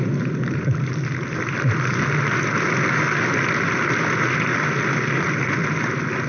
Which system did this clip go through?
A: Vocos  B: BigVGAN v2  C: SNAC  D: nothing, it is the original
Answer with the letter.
D